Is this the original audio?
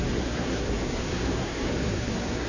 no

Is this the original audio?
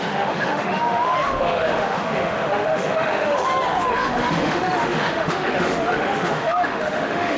no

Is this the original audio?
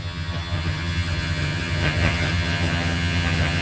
no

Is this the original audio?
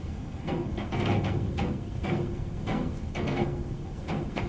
no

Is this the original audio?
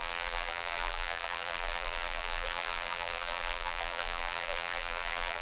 no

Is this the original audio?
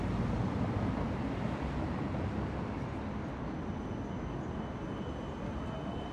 yes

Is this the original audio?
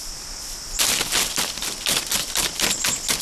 yes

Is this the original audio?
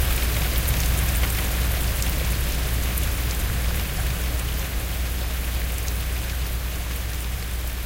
yes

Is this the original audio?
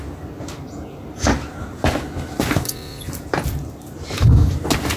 yes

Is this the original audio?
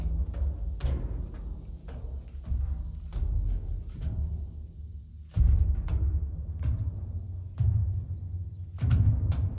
yes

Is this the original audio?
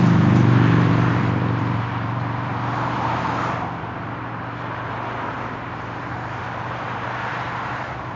no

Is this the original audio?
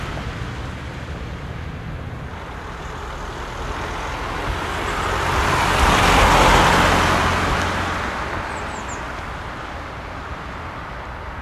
yes